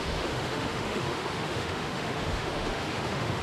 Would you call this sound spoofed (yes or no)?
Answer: yes